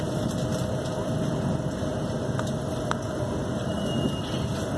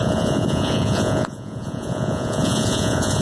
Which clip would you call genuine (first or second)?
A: first